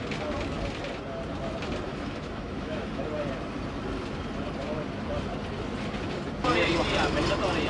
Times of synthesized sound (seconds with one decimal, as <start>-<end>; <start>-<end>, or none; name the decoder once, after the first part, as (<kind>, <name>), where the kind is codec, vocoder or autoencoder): 1.9-3.0 (autoencoder, DAC-VAE)